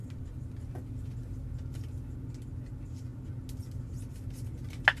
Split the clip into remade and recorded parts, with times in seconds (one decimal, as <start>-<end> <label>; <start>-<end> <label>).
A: 0.0-5.0 recorded